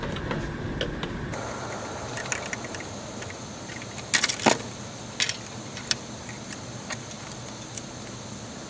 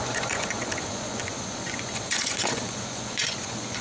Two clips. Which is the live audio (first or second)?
first